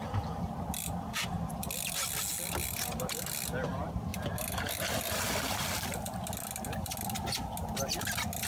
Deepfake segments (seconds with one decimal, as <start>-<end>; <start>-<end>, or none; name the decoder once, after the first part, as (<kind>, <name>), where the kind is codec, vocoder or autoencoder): none